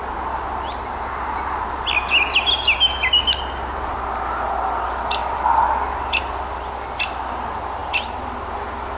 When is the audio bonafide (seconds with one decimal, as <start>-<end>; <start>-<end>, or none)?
0.0-9.0